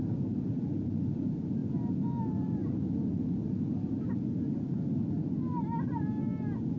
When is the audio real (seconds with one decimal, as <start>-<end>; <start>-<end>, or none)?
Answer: 0.0-6.8